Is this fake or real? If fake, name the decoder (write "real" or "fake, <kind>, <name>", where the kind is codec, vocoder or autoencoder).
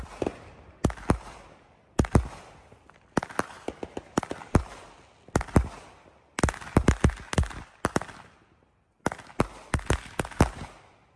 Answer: real